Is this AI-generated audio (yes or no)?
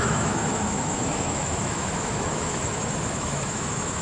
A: yes